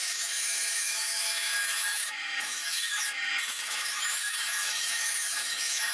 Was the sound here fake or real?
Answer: fake